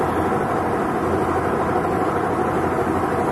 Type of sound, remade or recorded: recorded